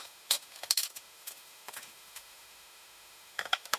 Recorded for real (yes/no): no